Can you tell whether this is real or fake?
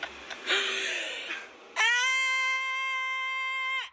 real